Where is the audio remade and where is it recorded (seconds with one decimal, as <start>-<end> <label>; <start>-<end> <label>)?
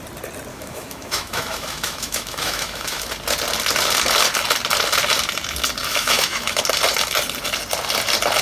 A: 0.0-0.5 recorded; 0.5-3.1 remade; 3.1-5.9 recorded; 5.9-6.6 remade; 6.6-8.4 recorded